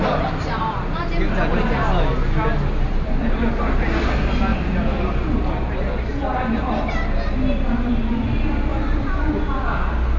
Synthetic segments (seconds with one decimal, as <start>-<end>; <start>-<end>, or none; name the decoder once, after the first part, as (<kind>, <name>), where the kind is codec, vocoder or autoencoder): 4.5-5.4 (vocoder, BigVGAN v2); 8.7-9.4